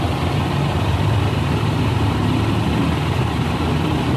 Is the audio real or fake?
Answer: fake